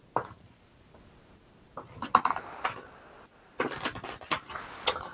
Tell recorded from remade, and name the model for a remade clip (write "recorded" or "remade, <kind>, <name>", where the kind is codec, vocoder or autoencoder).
recorded